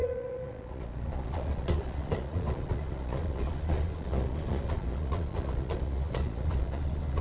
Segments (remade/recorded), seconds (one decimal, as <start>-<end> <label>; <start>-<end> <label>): 0.0-7.2 remade